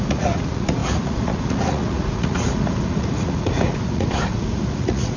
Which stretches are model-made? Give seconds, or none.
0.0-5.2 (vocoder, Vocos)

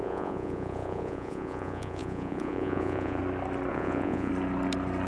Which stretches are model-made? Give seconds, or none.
0.0-3.2 (vocoder, Vocos); 3.7-4.3

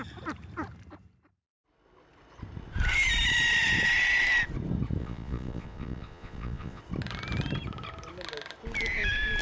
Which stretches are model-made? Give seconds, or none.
5.0-6.8 (vocoder, Vocos)

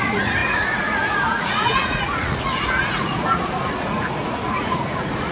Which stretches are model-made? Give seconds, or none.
0.0-5.3 (vocoder, Vocos)

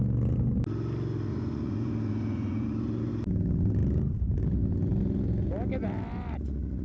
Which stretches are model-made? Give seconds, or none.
1.3-3.1 (vocoder, Vocos)

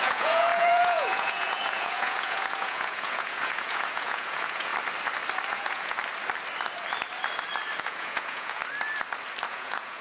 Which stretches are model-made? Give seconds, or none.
0.0-4.7 (vocoder, Vocos); 5.5-6.0; 7.8-8.6; 9.5-10.0

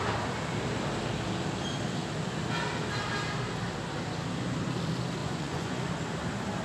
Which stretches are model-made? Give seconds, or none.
5.2-5.9 (vocoder, Vocos)